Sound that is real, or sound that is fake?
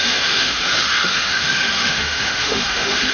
fake